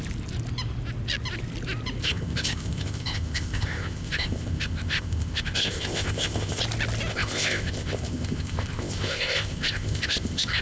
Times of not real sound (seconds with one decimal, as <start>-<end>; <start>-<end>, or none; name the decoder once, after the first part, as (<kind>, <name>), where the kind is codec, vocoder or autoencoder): 2.0-6.6 (codec, ZipCodec); 7.1-10.6